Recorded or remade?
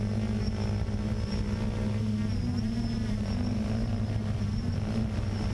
recorded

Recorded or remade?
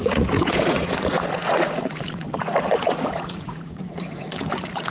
remade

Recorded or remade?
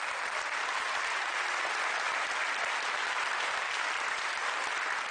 recorded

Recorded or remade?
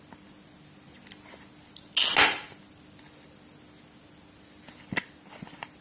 recorded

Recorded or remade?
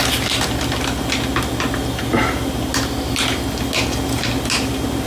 recorded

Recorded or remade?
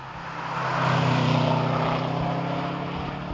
recorded